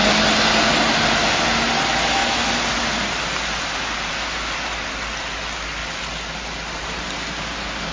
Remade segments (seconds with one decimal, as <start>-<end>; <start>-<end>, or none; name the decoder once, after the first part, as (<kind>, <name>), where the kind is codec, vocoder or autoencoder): none

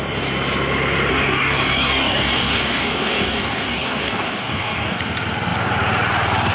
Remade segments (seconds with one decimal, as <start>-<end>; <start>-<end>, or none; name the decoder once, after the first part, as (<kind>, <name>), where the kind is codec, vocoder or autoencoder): 1.1-5.0 (codec, DAC)